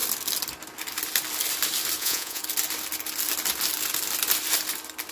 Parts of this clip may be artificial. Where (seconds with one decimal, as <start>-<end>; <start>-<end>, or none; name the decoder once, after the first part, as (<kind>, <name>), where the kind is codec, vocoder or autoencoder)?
2.0-2.4 (vocoder, Vocos)